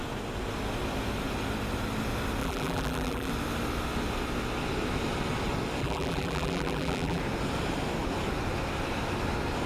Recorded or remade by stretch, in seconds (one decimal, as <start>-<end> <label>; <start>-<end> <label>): 0.0-2.4 recorded; 2.4-3.3 remade; 3.3-5.8 recorded; 5.8-7.2 remade; 7.2-9.7 recorded